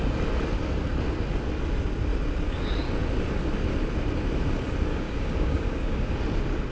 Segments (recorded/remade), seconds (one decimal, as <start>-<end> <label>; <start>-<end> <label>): 0.0-4.9 recorded; 4.9-6.1 remade; 6.1-6.7 recorded